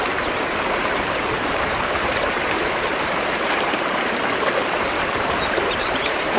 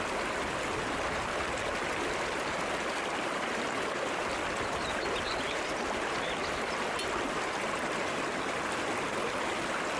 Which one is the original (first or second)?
second